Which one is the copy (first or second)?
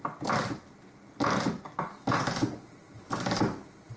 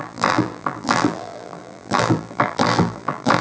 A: second